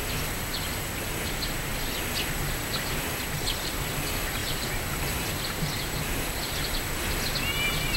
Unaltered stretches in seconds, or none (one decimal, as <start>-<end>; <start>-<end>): 0.0-4.4; 6.7-8.0